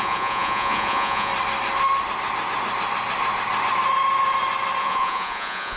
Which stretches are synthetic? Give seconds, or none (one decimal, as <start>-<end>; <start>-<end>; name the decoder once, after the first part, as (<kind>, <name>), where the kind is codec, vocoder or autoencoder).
0.0-1.3 (vocoder, Vocos); 4.8-5.8